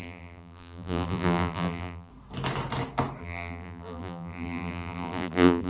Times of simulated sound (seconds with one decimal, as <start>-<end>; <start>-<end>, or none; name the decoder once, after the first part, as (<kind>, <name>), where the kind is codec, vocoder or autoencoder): 0.0-2.1 (vocoder, BigVGAN v2); 3.2-5.7